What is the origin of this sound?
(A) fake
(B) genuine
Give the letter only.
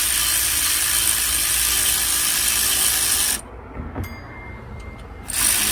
B